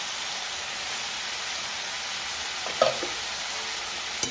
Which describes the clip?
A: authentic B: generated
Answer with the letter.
A